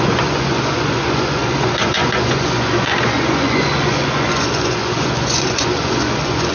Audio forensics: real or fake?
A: fake